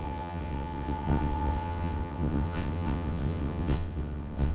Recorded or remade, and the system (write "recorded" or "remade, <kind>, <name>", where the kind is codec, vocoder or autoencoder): remade, vocoder, WaveNeXt